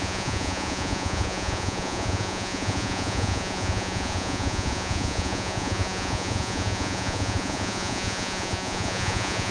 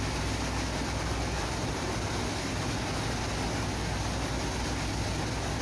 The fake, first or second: first